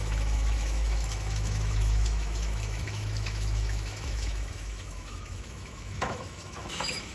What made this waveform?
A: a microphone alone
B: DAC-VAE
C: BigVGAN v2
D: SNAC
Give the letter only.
B